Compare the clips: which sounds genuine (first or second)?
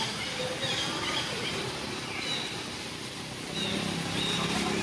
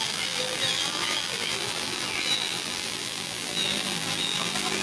first